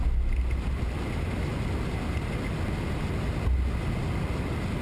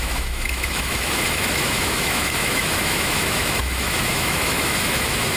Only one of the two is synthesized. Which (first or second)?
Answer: second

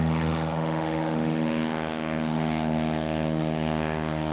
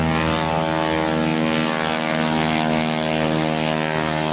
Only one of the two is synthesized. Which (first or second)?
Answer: first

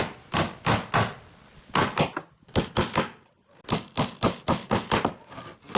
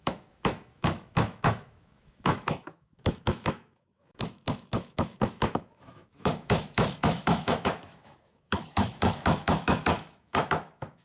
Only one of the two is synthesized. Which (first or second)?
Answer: second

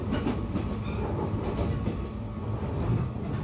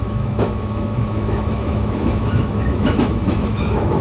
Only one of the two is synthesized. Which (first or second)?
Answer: second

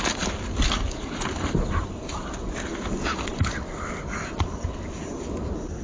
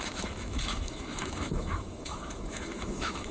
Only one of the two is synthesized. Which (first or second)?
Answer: second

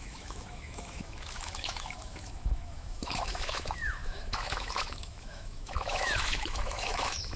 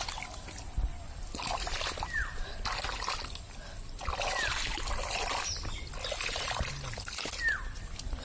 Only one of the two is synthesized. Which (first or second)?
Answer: first